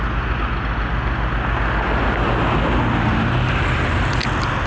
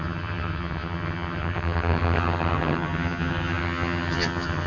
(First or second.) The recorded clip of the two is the first